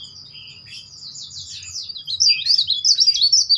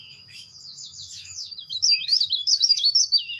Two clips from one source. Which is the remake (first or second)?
second